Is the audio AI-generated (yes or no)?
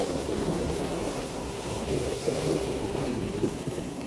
yes